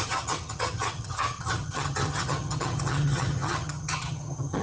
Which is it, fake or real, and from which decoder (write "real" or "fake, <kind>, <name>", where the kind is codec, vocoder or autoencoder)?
fake, vocoder, HiFi-GAN